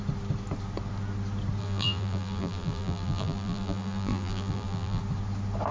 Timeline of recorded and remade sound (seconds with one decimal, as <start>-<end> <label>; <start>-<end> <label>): 0.0-1.6 recorded; 1.6-5.0 remade; 5.0-5.7 recorded